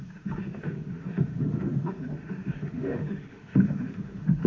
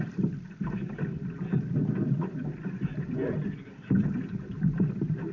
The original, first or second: second